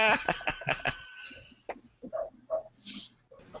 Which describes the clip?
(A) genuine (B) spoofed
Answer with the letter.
A